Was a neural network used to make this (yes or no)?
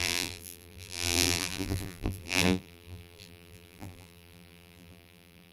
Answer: yes